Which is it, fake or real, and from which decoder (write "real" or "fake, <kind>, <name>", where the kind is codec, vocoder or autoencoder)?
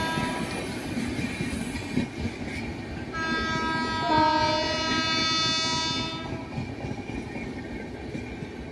real